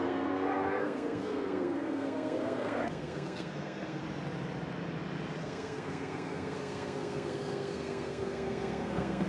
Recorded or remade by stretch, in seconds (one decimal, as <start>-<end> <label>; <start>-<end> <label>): 0.0-4.0 remade; 4.0-5.4 recorded; 5.4-9.3 remade